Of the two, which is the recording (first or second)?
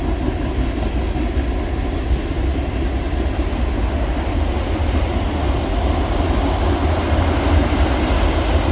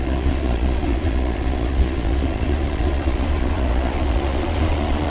first